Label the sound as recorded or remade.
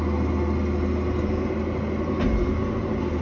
recorded